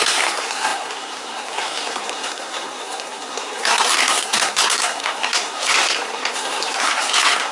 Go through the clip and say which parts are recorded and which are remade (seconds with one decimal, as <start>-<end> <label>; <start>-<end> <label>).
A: 0.0-7.5 remade